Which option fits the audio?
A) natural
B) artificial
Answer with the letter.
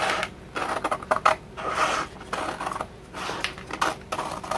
A